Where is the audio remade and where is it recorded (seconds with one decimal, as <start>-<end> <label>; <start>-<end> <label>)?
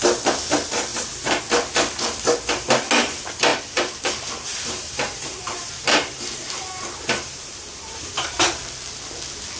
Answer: 0.0-0.9 recorded; 0.9-1.4 remade; 1.4-3.5 recorded; 3.5-4.1 remade; 4.1-4.5 recorded; 4.5-8.6 remade; 8.6-9.6 recorded